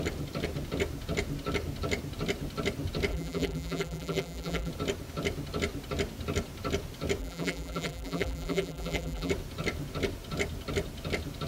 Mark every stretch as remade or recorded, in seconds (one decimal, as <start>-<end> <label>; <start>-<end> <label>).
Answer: 0.0-3.1 recorded; 3.1-4.7 remade; 4.7-7.2 recorded; 7.2-9.3 remade; 9.3-11.5 recorded